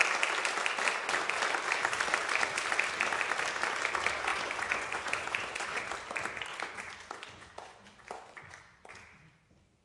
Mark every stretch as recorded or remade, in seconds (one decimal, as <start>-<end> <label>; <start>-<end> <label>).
0.0-4.3 recorded; 4.3-5.8 remade; 5.8-6.5 recorded; 6.5-8.9 remade; 8.9-9.8 recorded